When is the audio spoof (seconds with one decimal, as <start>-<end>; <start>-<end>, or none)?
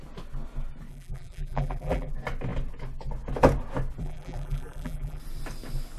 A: 0.9-2.1; 4.0-5.2